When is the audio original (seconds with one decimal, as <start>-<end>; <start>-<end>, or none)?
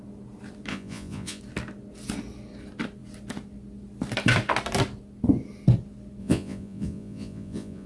0.0-0.7; 1.4-6.2